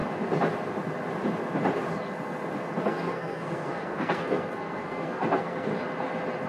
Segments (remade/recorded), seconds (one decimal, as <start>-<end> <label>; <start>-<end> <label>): 0.0-2.8 recorded; 2.8-5.7 remade; 5.7-6.5 recorded

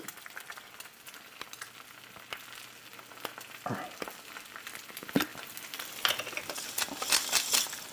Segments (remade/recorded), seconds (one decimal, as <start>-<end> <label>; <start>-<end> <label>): 0.0-7.9 recorded